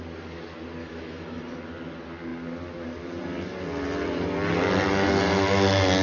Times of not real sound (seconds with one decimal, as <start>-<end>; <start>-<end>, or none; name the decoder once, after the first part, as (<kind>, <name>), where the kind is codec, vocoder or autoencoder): 0.8-1.4 (autoencoder, DAC-VAE)